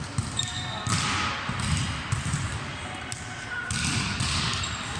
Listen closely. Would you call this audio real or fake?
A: real